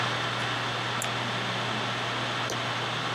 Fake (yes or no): no